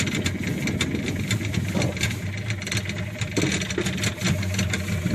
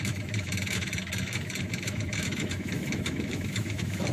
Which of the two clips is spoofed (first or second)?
second